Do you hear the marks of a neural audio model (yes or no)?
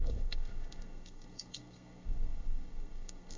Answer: yes